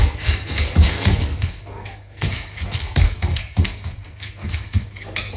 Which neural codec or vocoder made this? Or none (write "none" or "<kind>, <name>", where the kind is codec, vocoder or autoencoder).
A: codec, SNAC